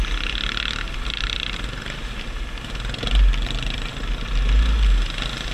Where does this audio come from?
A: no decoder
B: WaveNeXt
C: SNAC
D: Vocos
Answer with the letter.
A